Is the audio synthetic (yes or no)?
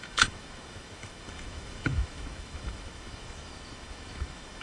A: yes